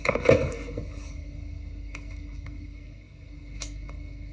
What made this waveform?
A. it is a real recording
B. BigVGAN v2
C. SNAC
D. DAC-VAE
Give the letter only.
C